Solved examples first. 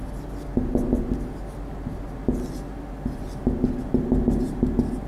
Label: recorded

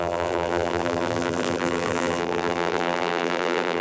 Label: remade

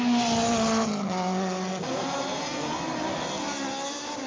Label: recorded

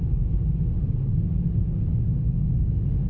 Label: recorded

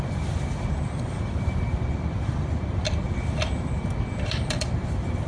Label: remade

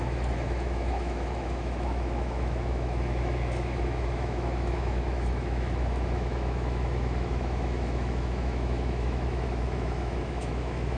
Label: remade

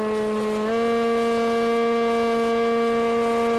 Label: recorded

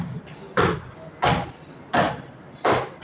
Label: recorded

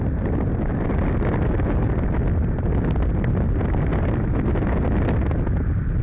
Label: recorded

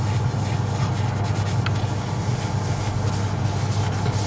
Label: recorded